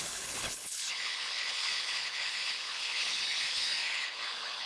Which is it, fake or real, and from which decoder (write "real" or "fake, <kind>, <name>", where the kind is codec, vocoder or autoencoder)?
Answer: fake, codec, HILCodec